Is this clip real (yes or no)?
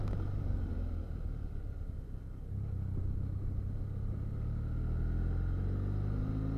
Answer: yes